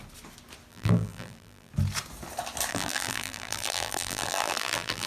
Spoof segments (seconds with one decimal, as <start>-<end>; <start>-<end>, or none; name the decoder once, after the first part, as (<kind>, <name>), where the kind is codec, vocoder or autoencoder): 0.7-1.7 (vocoder, BigVGAN v2); 2.7-5.1